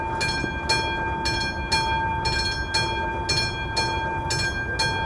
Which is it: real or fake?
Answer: real